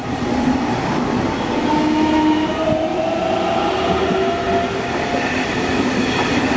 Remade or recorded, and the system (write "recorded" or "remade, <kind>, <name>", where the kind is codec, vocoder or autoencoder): recorded